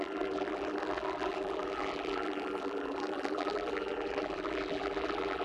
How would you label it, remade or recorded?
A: remade